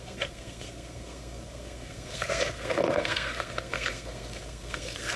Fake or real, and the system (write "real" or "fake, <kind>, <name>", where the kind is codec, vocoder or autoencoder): fake, codec, SNAC